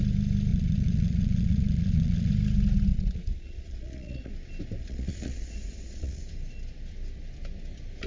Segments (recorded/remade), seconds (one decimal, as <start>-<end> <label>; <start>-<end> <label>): 0.0-0.5 recorded; 0.5-2.3 remade; 2.3-2.9 recorded; 2.9-4.3 remade; 4.3-4.8 recorded; 4.8-6.2 remade; 6.2-8.1 recorded